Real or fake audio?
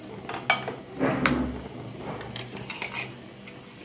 real